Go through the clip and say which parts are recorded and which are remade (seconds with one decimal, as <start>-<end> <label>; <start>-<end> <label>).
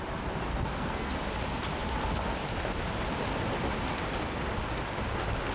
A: 0.0-0.5 recorded; 0.5-1.1 remade; 1.1-5.5 recorded